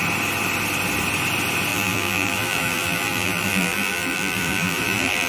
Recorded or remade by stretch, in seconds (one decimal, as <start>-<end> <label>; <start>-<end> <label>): 0.0-1.7 recorded; 1.7-5.3 remade